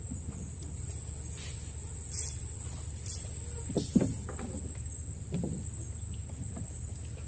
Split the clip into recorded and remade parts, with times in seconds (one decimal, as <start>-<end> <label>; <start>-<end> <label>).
0.0-7.3 recorded